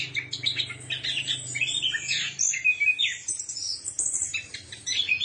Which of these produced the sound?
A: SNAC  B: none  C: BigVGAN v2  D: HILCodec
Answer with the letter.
B